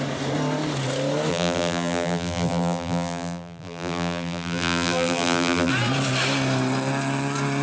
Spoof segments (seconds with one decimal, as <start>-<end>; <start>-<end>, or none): 1.3-5.7